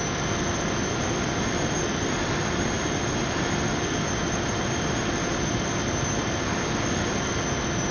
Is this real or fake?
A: real